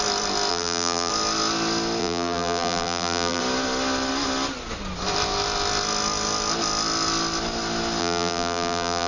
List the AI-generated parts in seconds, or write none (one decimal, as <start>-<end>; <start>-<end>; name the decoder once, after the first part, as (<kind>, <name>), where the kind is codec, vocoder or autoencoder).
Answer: 0.5-1.1 (vocoder, BigVGAN v2); 2.0-3.4; 8.0-9.1